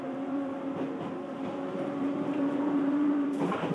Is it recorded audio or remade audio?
remade